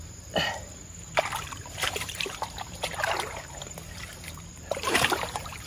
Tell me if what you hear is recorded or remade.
remade